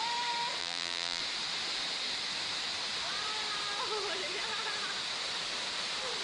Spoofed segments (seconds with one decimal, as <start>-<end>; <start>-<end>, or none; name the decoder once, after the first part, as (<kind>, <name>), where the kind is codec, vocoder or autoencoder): 0.6-1.2 (vocoder, BigVGAN v2)